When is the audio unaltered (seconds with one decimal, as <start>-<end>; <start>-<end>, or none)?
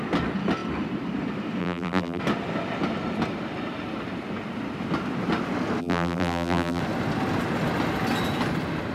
0.0-1.6; 2.2-5.8; 6.8-8.9